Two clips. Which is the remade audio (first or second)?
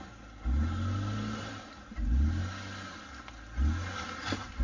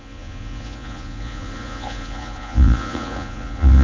second